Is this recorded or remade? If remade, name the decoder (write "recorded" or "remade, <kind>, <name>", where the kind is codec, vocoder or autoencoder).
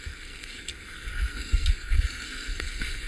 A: remade, codec, SNAC